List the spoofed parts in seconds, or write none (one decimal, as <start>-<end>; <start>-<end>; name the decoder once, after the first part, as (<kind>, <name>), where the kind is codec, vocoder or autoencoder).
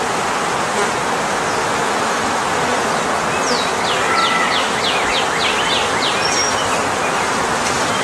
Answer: 1.6-2.4 (autoencoder, DAC-VAE); 4.2-5.2